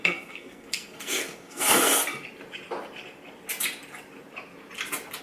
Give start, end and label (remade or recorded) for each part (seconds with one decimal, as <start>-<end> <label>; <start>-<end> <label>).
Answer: 0.0-2.0 remade; 2.0-5.2 recorded